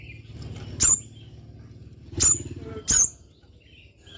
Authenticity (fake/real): real